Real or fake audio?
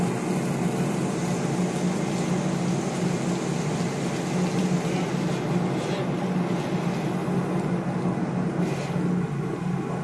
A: real